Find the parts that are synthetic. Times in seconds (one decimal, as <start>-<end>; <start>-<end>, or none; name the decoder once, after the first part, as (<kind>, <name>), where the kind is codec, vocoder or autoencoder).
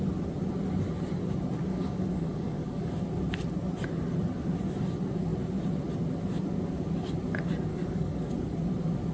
1.7-2.9 (codec, DAC); 7.7-8.3